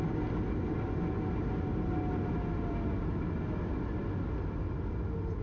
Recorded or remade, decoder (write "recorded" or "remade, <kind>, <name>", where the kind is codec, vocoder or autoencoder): recorded